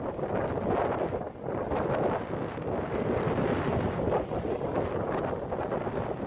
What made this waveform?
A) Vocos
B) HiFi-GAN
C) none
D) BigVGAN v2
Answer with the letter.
C